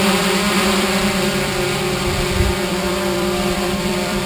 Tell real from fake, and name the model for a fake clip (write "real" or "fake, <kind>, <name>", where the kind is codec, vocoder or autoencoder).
fake, vocoder, BigVGAN v2